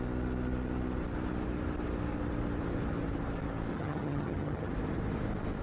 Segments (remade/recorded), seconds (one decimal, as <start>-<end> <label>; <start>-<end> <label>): 0.0-3.7 recorded; 3.7-4.7 remade; 4.7-5.6 recorded